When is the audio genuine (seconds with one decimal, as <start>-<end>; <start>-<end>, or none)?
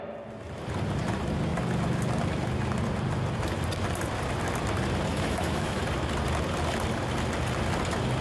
0.0-5.1; 5.8-8.2